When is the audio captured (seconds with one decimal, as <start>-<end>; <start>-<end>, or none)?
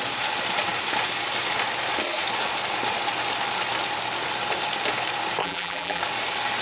0.0-5.4; 6.0-6.6